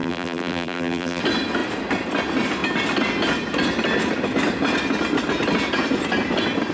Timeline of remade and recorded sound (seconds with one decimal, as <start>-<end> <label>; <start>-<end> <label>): 0.0-1.2 remade; 1.2-6.7 recorded